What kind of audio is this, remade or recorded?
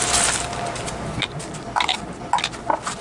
recorded